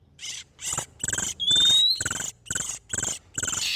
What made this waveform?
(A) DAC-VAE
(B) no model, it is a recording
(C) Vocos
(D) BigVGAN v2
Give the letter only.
B